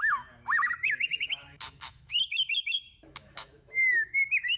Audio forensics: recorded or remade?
remade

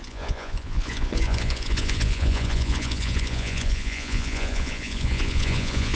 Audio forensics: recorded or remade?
remade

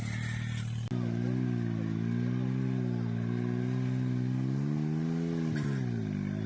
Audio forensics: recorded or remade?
recorded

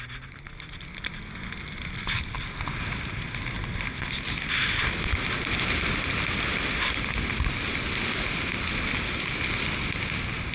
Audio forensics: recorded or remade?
recorded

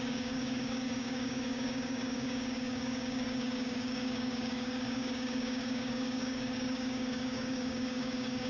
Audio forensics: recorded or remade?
remade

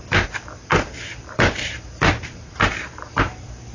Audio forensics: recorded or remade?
remade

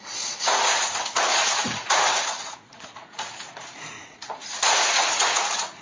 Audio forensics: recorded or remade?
remade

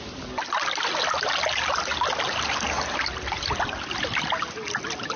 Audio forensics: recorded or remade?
recorded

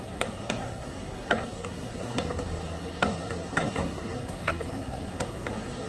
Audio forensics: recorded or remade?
remade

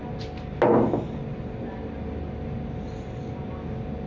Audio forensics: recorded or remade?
recorded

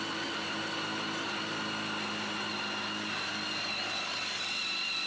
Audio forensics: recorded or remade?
recorded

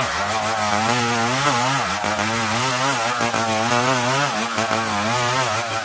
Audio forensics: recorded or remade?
recorded